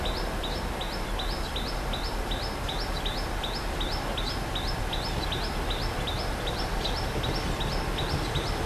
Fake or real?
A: real